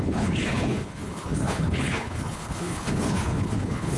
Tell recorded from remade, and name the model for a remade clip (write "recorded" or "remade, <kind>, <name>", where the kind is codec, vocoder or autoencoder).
remade, codec, HILCodec